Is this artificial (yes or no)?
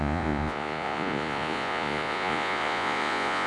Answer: yes